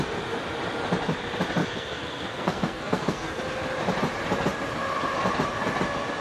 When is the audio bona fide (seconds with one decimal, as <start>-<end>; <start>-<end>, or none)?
0.0-1.6; 3.4-6.2

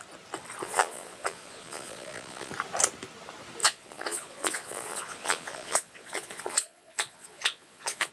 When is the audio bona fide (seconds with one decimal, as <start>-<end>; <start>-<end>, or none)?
0.0-0.6; 2.5-3.6

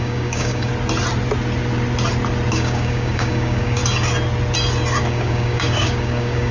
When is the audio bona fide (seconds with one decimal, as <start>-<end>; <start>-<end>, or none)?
0.7-2.5; 3.8-5.0

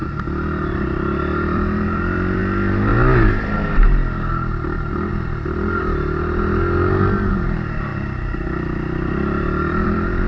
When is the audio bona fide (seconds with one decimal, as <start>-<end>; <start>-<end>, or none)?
2.4-7.9

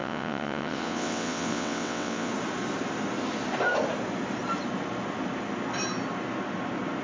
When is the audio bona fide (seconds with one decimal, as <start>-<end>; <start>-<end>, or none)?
2.3-7.0

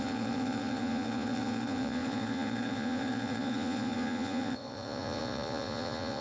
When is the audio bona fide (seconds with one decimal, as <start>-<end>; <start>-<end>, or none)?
none